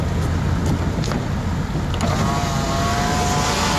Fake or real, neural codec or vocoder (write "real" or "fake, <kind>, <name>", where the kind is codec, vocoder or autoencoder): real